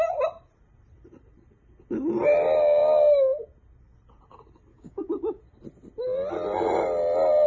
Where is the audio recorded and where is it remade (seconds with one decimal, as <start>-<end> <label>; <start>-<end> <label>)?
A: 0.0-4.7 recorded; 4.7-5.4 remade; 5.4-7.5 recorded

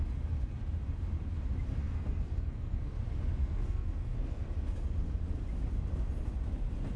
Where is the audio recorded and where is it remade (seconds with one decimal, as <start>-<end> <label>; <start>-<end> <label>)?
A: 0.0-1.8 recorded; 1.8-3.0 remade; 3.0-3.4 recorded; 3.4-4.4 remade; 4.4-7.0 recorded

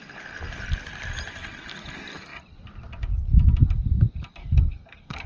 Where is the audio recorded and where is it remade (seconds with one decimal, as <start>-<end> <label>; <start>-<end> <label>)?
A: 0.0-4.4 recorded; 4.4-5.3 remade

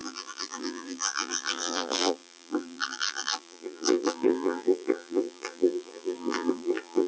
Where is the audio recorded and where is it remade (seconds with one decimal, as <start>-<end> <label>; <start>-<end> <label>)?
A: 0.0-7.1 remade

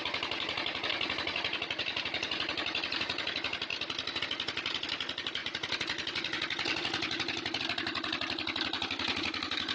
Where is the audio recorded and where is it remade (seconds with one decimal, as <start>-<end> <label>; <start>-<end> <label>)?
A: 0.0-9.7 recorded

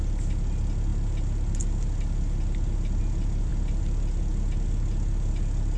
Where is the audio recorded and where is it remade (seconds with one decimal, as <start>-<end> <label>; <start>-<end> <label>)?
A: 0.0-5.8 recorded

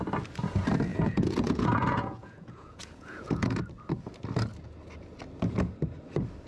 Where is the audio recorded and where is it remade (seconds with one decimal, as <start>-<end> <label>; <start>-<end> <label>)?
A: 0.0-0.9 recorded; 0.9-3.6 remade; 3.6-6.5 recorded

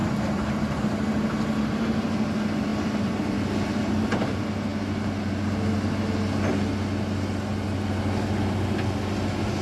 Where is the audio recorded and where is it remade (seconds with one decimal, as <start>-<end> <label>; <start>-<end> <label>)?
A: 0.0-9.6 recorded